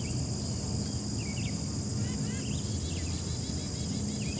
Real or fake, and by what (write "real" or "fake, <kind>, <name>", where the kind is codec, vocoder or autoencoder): real